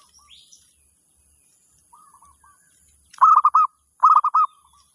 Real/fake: real